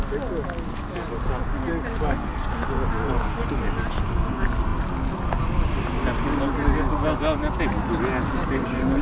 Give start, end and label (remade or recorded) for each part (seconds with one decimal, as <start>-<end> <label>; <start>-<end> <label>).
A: 0.0-9.0 recorded